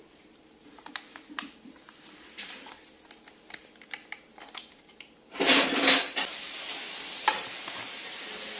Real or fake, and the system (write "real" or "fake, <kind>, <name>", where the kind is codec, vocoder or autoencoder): real